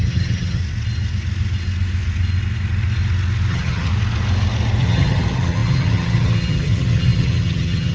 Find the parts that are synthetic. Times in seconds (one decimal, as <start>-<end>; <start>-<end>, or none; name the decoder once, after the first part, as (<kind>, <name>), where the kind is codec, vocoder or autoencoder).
0.0-0.6 (vocoder, HiFi-GAN); 3.5-3.9; 4.8-7.9